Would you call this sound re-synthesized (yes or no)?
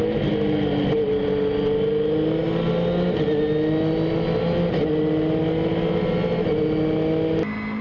no